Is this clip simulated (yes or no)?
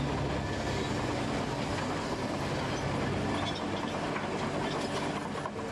no